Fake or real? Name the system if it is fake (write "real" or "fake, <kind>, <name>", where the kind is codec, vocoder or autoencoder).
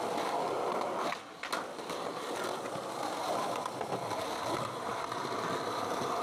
real